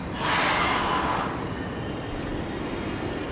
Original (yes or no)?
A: yes